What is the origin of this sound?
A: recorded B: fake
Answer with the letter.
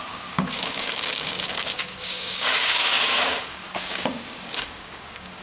B